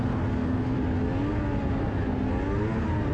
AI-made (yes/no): no